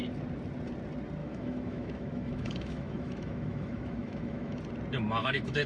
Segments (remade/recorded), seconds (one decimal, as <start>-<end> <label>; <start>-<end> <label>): 0.0-1.2 recorded; 1.2-4.6 remade; 4.6-5.2 recorded; 5.2-5.7 remade